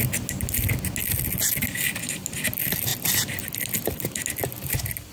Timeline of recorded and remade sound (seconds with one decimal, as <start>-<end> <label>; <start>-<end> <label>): 0.0-5.1 recorded